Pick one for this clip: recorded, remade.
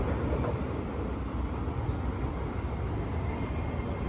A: recorded